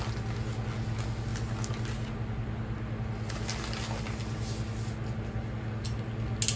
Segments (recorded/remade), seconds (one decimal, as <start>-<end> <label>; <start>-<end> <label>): 0.0-6.6 recorded